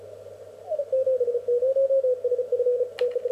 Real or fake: real